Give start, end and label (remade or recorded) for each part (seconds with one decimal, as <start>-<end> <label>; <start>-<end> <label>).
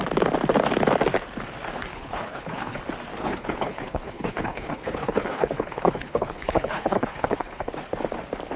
0.0-1.9 recorded; 1.9-2.8 remade; 2.8-3.2 recorded; 3.2-7.7 remade; 7.7-8.6 recorded